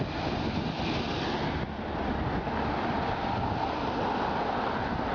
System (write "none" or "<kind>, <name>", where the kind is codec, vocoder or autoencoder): none